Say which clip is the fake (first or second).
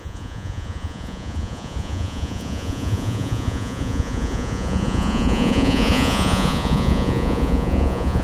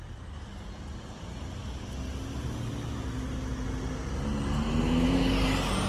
first